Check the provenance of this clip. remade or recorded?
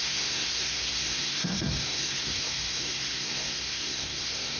remade